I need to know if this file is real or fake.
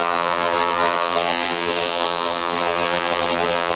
fake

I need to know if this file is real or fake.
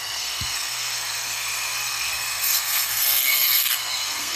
fake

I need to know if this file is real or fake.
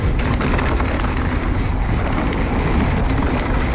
real